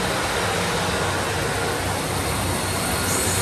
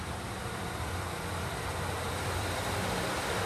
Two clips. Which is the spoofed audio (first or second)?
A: second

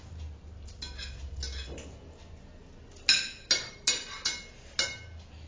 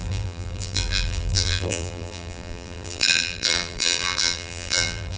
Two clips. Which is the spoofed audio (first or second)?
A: second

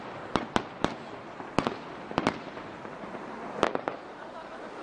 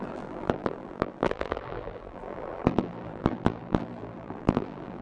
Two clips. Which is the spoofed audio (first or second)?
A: second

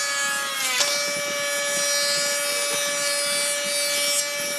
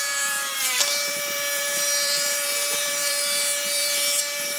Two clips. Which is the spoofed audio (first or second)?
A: second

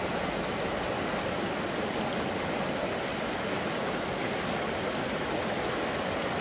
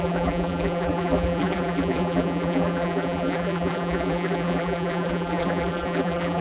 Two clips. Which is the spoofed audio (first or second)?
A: second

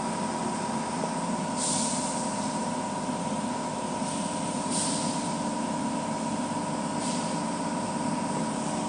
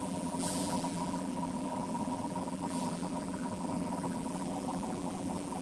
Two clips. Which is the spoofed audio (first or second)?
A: second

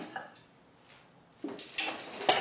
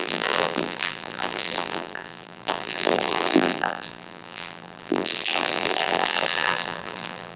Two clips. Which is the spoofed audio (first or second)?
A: second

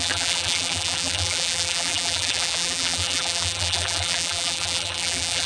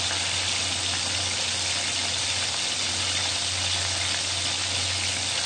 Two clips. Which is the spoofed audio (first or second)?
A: first